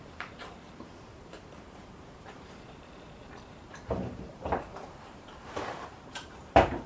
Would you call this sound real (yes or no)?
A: no